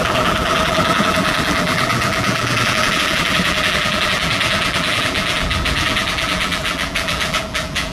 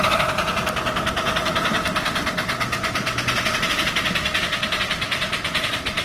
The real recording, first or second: second